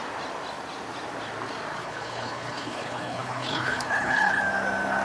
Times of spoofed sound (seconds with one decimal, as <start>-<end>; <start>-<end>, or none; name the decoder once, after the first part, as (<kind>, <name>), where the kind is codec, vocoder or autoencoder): 1.8-4.4 (codec, HILCodec)